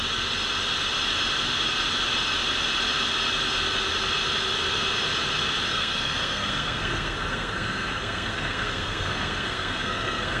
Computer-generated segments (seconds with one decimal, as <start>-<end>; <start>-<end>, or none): 5.7-10.4